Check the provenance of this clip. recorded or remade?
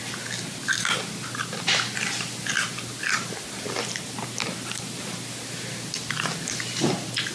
recorded